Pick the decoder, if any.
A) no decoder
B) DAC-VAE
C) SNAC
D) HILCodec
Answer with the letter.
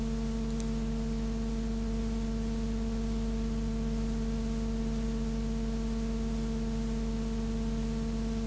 A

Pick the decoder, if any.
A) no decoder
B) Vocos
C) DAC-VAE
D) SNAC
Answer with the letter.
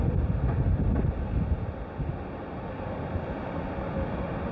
A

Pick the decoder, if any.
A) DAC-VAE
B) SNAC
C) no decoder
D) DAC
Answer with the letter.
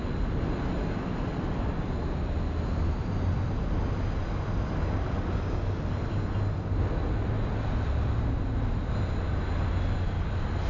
C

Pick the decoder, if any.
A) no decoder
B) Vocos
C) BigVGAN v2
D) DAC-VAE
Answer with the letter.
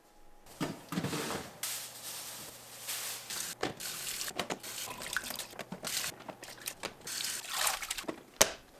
A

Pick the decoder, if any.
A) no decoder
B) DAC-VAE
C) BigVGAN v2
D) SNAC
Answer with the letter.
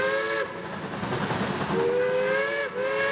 A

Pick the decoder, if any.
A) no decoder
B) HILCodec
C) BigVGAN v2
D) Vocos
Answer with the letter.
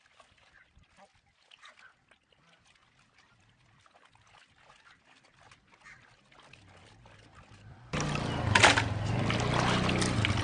A